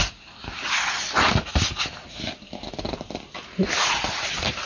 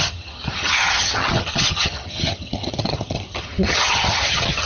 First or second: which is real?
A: first